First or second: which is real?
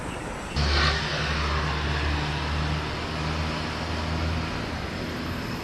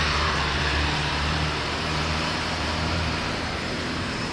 first